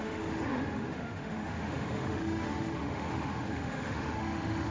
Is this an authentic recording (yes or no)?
no